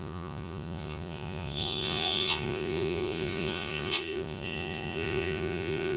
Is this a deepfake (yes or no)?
yes